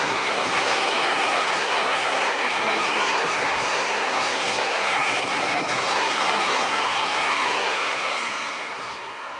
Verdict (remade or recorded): remade